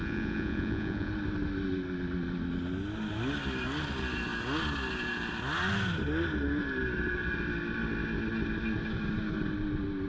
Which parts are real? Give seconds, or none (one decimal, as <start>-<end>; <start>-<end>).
1.1-10.1